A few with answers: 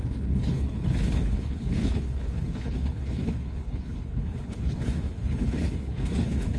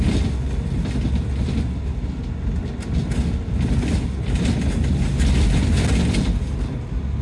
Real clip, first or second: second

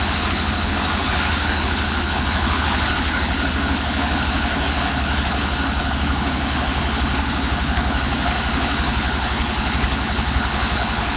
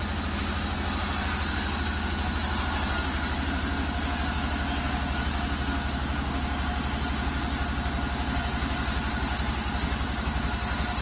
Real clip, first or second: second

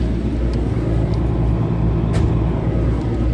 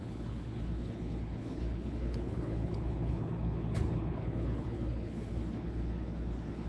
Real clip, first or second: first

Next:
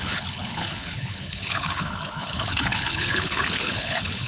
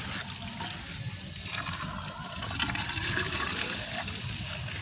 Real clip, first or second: second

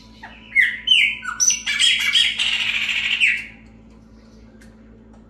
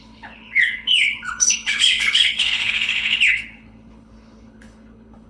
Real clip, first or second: first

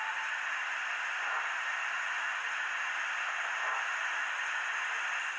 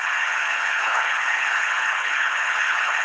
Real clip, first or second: first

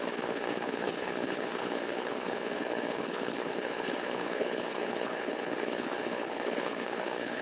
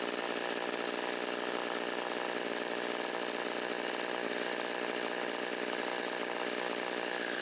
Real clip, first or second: second